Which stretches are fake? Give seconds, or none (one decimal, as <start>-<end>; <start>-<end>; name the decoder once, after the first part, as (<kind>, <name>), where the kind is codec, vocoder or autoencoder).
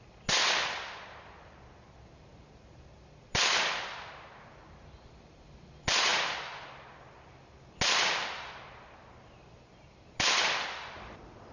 none